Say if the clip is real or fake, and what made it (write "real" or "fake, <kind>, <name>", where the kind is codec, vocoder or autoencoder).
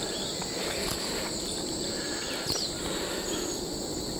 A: real